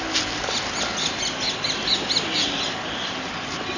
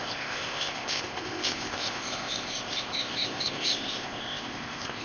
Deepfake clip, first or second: second